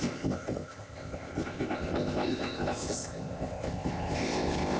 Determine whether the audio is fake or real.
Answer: fake